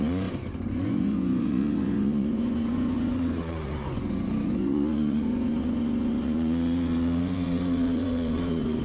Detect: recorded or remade remade